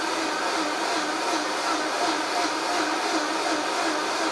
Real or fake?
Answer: real